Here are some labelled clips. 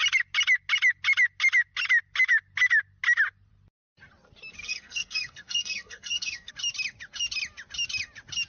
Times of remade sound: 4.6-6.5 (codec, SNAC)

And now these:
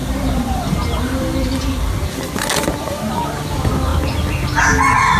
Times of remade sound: none